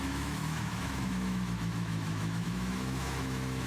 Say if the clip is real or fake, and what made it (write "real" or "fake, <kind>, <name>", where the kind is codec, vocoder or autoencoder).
fake, autoencoder, DAC-VAE